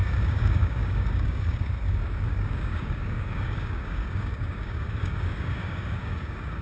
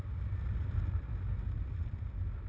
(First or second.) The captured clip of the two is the second